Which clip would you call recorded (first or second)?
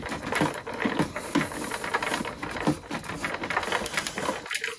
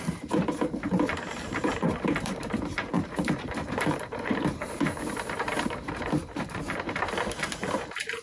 first